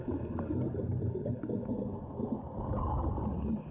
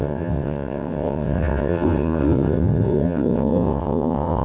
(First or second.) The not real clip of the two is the second